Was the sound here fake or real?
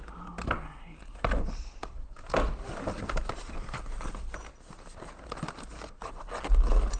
real